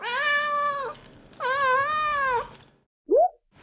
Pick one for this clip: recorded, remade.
recorded